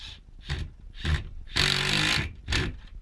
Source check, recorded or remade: recorded